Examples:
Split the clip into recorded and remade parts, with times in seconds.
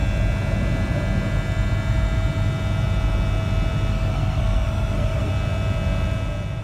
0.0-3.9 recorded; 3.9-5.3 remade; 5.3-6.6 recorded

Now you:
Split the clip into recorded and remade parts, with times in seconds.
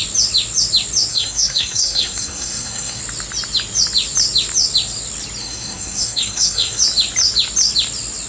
0.0-1.1 recorded; 1.1-3.0 remade; 3.0-5.4 recorded; 5.4-6.8 remade; 6.8-8.3 recorded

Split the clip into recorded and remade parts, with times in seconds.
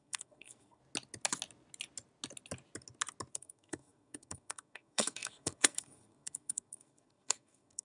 0.0-0.8 remade; 0.8-3.3 recorded; 3.3-7.8 remade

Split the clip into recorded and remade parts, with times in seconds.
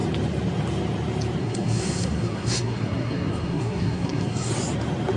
0.0-1.4 recorded; 1.4-4.5 remade; 4.5-5.2 recorded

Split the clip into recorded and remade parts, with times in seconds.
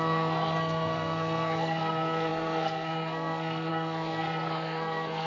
0.0-5.3 remade